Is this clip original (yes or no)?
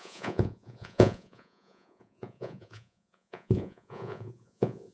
no